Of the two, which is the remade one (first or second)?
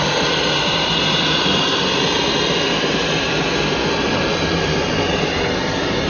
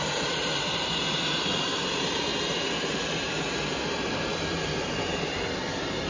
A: second